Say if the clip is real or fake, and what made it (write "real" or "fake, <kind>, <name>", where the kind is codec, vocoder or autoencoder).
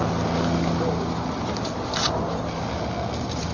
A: real